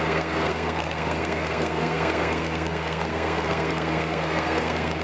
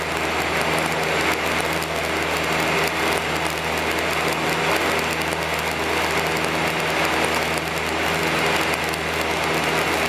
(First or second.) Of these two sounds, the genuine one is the second